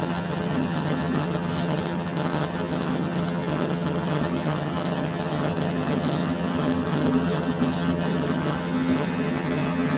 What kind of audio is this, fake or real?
fake